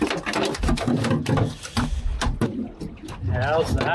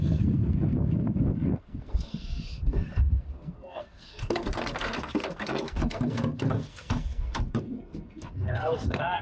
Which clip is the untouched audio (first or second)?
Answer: first